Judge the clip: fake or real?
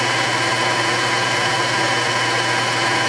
real